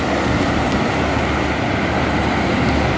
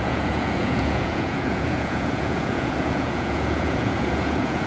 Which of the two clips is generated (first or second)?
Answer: second